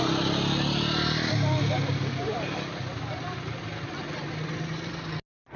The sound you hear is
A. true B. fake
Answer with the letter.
A